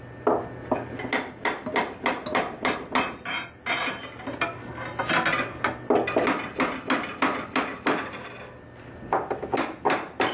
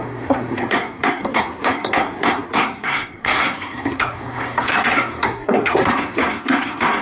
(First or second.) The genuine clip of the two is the first